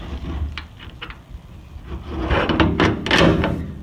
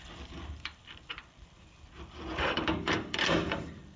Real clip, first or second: first